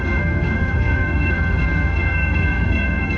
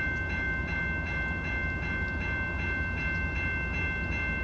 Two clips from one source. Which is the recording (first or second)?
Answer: second